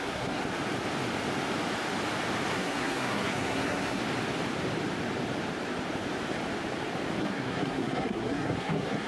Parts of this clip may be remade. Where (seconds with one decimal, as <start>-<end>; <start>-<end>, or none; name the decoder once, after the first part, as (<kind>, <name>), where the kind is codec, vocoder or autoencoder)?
0.0-0.4 (codec, SNAC); 2.5-4.0; 7.2-9.1

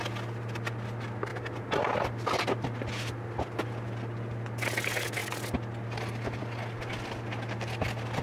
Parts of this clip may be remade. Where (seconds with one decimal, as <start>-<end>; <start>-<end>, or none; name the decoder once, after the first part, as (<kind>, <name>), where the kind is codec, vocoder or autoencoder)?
none

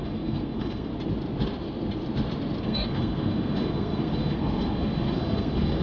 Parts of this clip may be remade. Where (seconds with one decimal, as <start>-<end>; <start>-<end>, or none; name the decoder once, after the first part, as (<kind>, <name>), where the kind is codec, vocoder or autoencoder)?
0.0-0.9 (codec, SNAC); 2.6-5.8